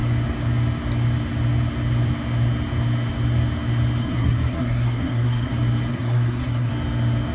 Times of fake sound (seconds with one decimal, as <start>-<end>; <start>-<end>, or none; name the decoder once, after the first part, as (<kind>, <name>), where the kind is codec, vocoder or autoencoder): 4.0-5.5 (codec, SNAC); 5.9-6.7